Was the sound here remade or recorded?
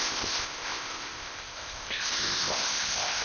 remade